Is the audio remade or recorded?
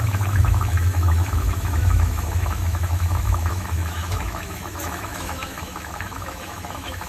remade